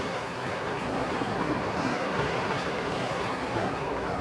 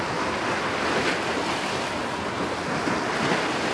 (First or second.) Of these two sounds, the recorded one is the second